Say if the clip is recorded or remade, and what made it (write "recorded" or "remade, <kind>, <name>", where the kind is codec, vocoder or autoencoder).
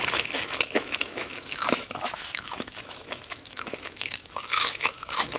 remade, autoencoder, DAC-VAE